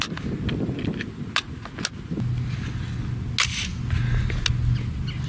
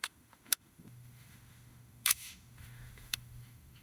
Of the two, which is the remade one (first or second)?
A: second